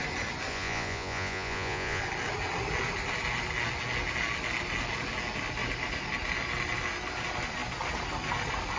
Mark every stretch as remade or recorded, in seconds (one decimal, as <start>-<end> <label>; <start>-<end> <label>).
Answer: 0.0-0.5 recorded; 0.5-2.0 remade; 2.0-8.8 recorded